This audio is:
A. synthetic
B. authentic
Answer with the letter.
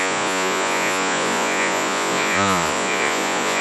A